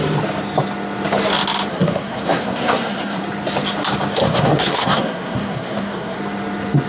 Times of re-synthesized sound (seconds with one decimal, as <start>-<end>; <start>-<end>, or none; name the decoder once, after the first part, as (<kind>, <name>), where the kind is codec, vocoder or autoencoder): 1.7-3.2 (codec, SNAC); 4.2-6.2